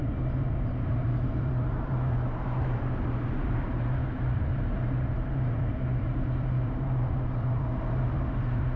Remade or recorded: remade